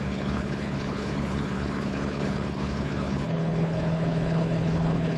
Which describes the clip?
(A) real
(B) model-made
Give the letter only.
B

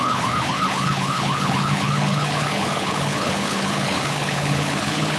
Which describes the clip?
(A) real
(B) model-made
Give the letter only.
B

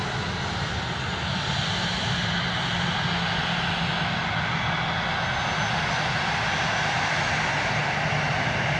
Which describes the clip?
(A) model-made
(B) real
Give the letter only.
B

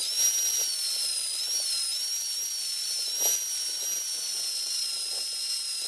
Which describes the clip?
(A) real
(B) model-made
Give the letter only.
A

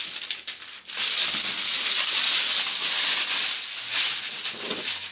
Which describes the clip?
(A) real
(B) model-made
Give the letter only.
A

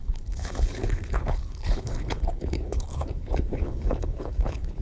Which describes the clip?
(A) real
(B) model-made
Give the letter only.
B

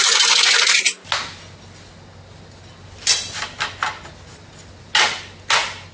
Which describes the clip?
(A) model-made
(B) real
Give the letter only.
B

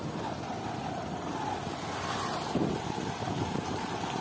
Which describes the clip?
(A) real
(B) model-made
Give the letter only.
A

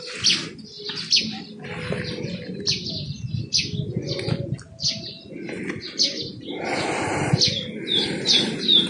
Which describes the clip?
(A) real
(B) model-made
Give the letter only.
A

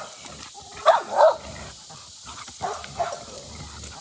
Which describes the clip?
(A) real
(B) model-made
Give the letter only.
A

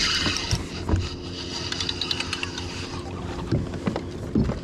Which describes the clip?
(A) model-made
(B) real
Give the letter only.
B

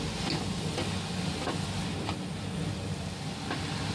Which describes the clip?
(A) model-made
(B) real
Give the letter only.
B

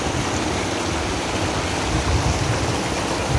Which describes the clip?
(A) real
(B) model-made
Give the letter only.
A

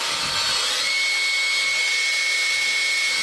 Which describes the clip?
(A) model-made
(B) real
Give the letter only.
B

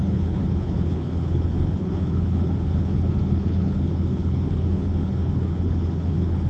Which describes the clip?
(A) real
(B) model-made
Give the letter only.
B